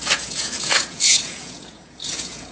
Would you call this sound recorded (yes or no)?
no